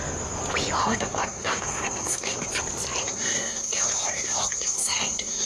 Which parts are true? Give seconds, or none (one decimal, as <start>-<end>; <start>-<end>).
0.0-0.8; 2.5-3.0